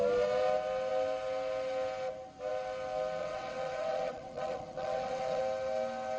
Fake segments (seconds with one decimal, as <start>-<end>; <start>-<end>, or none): 3.2-5.4